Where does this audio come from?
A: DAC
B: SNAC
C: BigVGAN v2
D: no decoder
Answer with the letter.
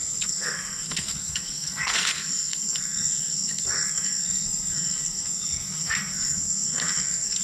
B